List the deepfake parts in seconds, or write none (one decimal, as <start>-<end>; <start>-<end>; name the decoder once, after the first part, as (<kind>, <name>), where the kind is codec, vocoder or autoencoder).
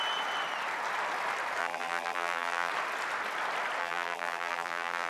1.6-2.7 (vocoder, BigVGAN v2); 3.8-5.1